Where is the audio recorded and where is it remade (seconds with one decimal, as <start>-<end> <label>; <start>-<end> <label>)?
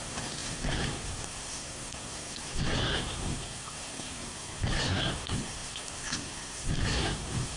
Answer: 0.0-7.6 remade